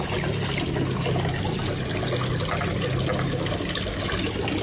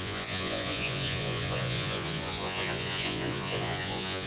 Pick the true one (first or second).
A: first